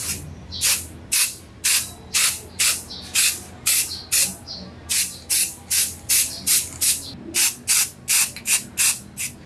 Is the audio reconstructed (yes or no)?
no